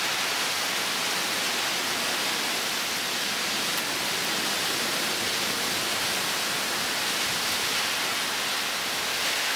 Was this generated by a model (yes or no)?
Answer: no